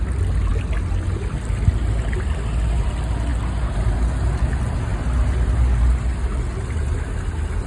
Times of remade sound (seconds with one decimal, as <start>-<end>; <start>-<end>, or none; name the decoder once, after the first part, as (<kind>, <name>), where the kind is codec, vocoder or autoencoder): none